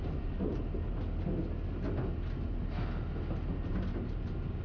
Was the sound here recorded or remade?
recorded